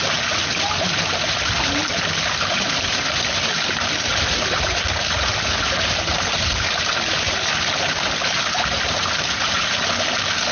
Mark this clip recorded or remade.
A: recorded